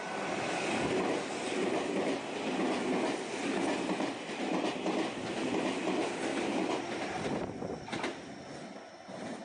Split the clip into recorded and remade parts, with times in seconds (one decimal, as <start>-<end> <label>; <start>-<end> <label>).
0.0-9.4 recorded